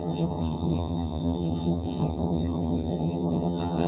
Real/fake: fake